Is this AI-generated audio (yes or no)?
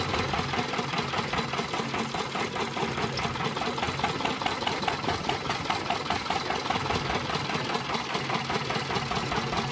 no